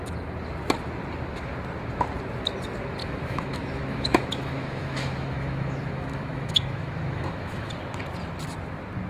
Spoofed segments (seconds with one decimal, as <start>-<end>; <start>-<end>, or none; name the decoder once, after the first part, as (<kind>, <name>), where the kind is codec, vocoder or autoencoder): 3.0-7.7 (autoencoder, DAC-VAE)

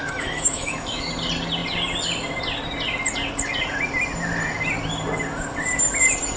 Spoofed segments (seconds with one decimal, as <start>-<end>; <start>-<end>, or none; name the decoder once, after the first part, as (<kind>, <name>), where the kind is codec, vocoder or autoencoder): 0.0-1.1 (autoencoder, DAC-VAE)

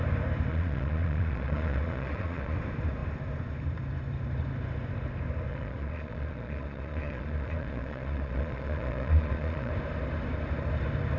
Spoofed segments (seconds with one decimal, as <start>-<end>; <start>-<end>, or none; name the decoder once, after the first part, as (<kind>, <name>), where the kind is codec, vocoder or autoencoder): 0.5-2.6 (vocoder, Vocos); 5.5-9.7

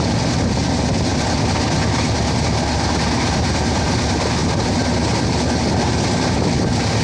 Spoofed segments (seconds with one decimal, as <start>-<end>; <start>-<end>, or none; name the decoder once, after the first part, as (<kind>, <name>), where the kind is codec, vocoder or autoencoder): none